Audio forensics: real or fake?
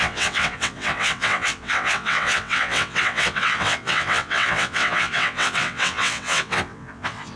fake